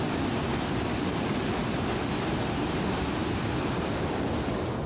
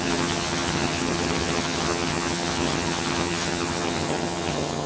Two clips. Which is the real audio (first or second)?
first